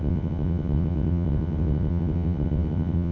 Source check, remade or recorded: remade